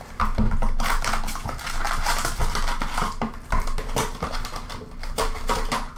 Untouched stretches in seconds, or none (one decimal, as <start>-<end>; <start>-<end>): 0.0-6.0